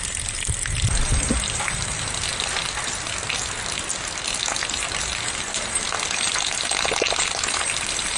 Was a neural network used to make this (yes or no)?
no